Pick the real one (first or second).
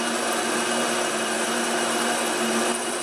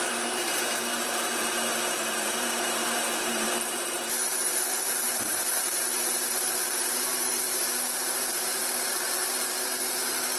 first